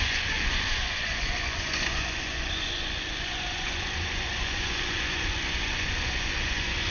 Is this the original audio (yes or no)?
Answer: no